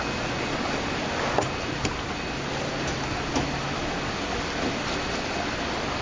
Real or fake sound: real